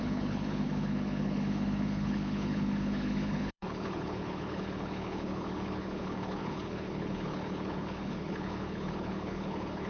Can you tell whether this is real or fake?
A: fake